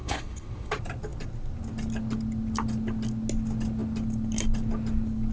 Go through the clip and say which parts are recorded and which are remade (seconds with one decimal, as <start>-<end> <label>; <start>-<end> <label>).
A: 0.0-0.7 remade; 0.7-5.3 recorded